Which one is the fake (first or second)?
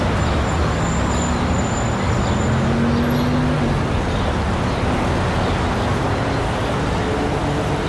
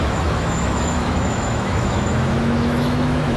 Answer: second